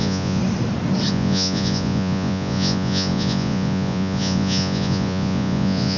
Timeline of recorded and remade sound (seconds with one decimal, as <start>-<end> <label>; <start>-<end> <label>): 0.0-0.4 remade; 0.4-1.1 recorded; 1.1-6.0 remade